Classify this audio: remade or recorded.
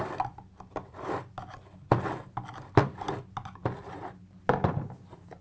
recorded